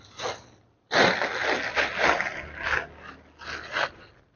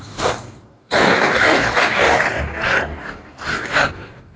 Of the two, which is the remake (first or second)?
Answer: second